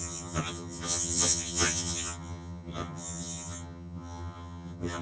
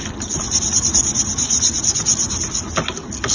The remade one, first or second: first